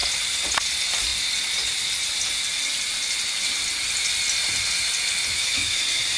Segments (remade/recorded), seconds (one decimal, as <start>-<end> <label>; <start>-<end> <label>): 0.0-5.3 recorded; 5.3-5.8 remade; 5.8-6.2 recorded